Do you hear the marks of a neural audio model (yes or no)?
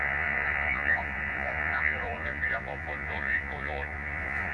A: yes